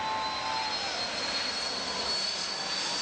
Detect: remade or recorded recorded